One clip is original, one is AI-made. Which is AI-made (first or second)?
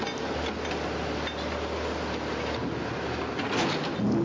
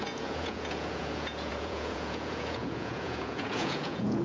second